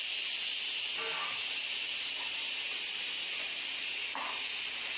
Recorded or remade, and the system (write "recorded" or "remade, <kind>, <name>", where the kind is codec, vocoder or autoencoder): recorded